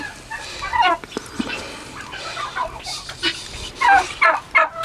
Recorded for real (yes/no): yes